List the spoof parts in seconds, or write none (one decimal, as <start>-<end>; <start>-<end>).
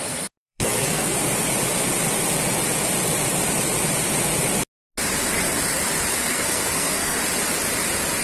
0.0-1.2; 6.1-7.2